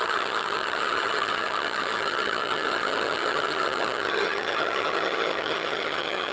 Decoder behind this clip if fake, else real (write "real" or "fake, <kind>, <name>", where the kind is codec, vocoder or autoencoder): fake, vocoder, HiFi-GAN